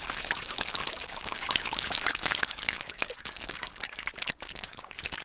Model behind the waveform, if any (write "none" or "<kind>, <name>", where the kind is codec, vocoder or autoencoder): codec, DAC